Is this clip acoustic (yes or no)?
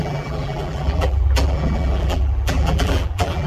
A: no